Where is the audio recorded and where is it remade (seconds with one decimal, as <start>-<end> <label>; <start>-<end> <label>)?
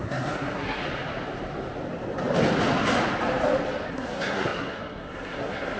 0.0-0.8 remade; 0.8-3.9 recorded; 3.9-5.8 remade